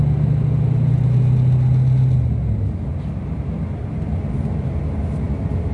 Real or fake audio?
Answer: real